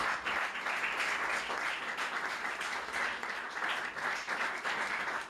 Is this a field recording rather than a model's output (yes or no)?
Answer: yes